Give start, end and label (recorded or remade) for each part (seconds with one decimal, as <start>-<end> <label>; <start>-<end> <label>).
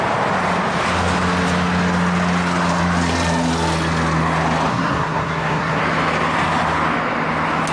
0.0-4.7 recorded; 4.7-5.8 remade; 5.8-7.7 recorded